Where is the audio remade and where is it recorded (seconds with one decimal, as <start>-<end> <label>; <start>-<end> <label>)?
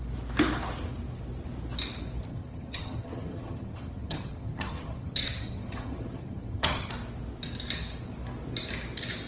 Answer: 0.0-2.3 recorded; 2.3-6.9 remade; 6.9-9.3 recorded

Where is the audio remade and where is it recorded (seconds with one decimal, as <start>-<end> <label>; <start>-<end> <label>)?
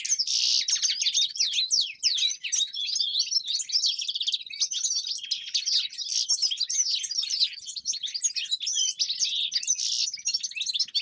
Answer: 0.0-11.0 recorded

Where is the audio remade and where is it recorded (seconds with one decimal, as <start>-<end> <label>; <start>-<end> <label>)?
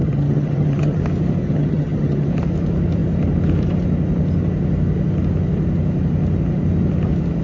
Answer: 0.0-1.0 remade; 1.0-1.4 recorded; 1.4-2.3 remade; 2.3-7.4 recorded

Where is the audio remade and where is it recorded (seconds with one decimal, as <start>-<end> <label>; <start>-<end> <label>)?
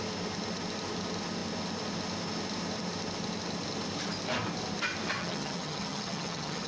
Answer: 0.0-5.2 recorded; 5.2-6.7 remade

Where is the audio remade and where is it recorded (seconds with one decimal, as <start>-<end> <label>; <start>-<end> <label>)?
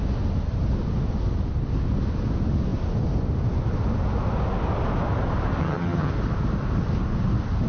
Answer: 0.0-5.6 recorded; 5.6-6.1 remade; 6.1-7.7 recorded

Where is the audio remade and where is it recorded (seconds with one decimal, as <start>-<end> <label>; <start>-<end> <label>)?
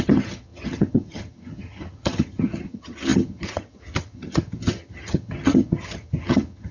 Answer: 0.0-6.7 remade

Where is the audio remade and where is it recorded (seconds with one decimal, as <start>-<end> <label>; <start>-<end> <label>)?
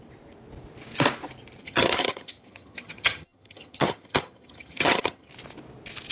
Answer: 0.0-1.6 recorded; 1.6-5.3 remade; 5.3-6.1 recorded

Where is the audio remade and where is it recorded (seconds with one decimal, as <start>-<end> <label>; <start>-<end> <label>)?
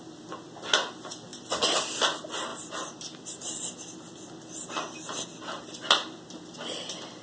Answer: 0.0-7.2 recorded